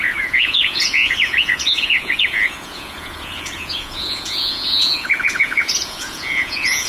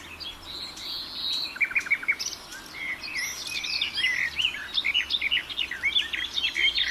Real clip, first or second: second